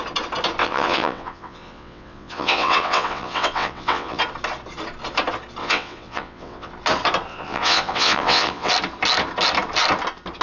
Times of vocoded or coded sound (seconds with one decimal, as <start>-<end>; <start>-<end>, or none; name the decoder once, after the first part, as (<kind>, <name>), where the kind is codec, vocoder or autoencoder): 0.6-4.2 (vocoder, WaveNeXt); 5.6-6.7; 7.3-8.7